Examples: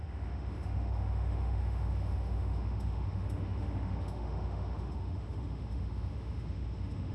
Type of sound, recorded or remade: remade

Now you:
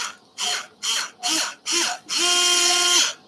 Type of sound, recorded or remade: recorded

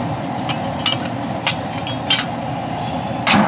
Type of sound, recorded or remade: recorded